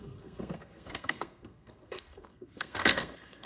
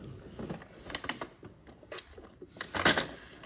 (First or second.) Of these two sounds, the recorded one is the second